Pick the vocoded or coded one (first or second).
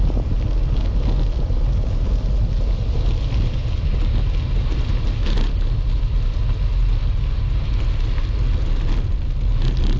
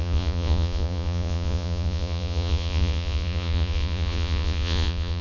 second